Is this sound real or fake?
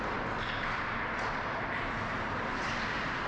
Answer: real